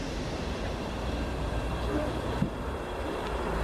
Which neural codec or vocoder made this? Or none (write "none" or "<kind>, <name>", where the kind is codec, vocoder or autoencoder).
vocoder, BigVGAN v2